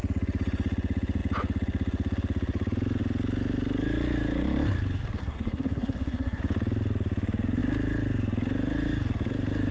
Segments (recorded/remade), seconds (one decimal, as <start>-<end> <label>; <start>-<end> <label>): 0.0-5.2 recorded; 5.2-6.4 remade; 6.4-9.7 recorded